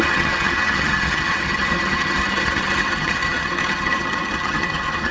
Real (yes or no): no